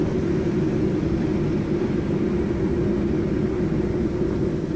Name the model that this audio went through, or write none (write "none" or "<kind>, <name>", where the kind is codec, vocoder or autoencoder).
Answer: none